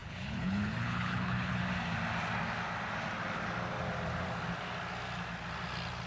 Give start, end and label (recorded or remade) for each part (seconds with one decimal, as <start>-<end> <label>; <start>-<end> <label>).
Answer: 0.0-1.6 remade; 1.6-6.1 recorded